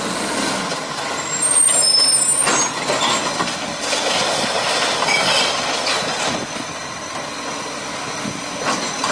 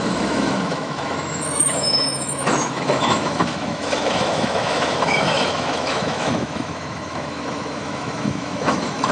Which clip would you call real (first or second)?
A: first